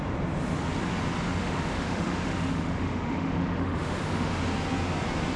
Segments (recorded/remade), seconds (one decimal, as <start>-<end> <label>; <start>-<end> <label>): 0.0-1.4 recorded; 1.4-4.4 remade; 4.4-5.4 recorded